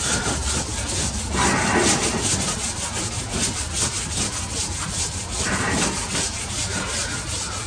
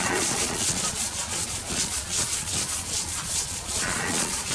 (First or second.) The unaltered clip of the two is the first